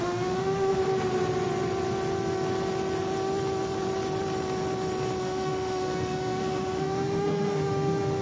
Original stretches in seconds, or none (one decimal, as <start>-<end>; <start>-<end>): 0.8-5.2